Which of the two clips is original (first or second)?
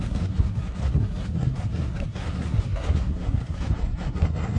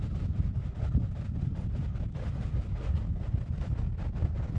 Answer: second